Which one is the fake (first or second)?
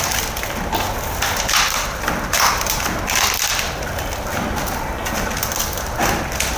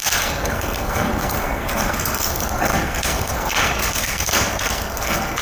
second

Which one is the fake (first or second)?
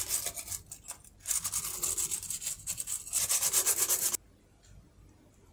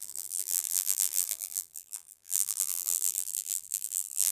second